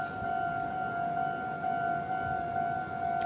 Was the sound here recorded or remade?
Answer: recorded